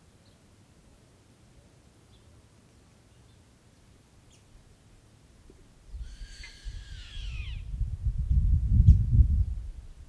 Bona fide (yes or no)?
yes